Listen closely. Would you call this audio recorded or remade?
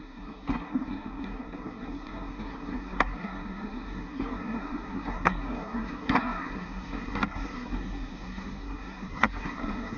remade